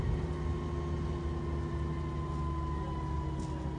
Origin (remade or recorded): recorded